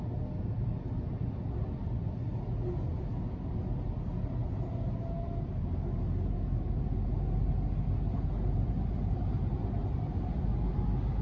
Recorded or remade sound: recorded